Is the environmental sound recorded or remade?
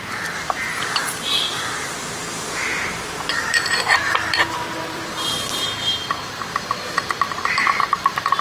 remade